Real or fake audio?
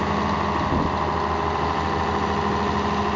real